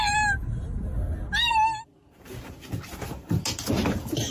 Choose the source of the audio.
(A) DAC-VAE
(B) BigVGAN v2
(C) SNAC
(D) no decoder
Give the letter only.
D